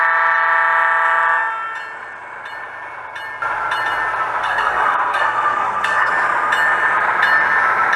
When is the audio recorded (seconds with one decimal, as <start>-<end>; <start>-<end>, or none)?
0.0-4.4; 6.1-8.0